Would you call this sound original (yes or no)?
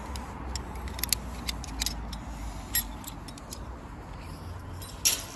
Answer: yes